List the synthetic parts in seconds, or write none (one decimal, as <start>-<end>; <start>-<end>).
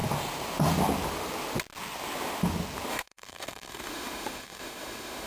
2.9-5.3